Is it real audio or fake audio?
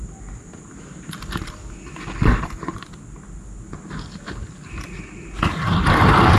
real